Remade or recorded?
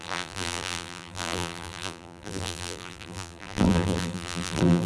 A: remade